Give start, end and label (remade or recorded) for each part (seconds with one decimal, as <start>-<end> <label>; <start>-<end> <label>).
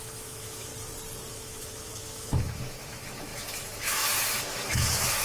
0.0-0.7 remade; 0.7-1.3 recorded; 1.3-5.2 remade